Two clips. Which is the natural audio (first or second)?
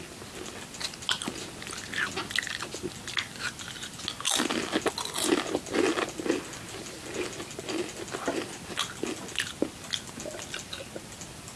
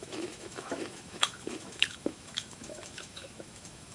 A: first